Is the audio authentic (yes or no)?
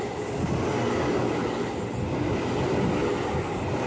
yes